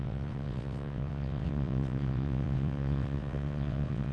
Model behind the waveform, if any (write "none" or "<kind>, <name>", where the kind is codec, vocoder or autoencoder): vocoder, WaveNeXt